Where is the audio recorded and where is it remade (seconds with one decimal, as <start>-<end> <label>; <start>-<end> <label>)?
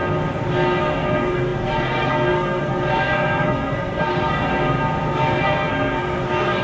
0.0-0.8 recorded; 0.8-4.5 remade; 4.5-5.1 recorded; 5.1-6.6 remade